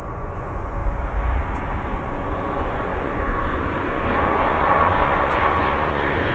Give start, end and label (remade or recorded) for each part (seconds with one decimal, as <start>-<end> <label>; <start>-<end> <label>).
0.0-0.8 remade; 0.8-1.8 recorded; 1.8-6.3 remade